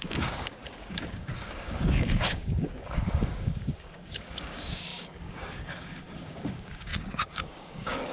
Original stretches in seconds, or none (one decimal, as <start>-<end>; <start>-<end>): none